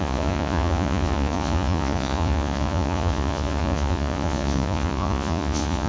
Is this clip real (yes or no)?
no